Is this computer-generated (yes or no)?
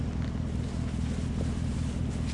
no